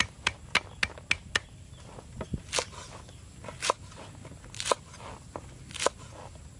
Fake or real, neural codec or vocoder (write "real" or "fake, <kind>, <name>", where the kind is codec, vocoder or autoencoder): real